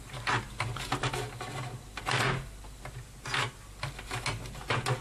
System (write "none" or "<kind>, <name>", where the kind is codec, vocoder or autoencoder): none